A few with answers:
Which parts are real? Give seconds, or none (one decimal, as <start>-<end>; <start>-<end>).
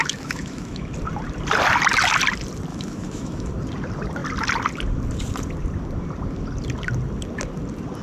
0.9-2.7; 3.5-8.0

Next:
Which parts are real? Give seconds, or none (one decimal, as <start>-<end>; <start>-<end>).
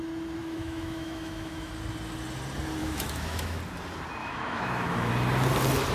0.0-0.4; 1.7-2.8; 3.6-4.2; 5.1-5.9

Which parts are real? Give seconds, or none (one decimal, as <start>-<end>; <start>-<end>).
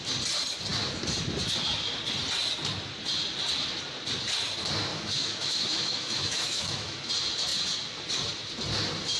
0.0-4.9; 7.1-9.2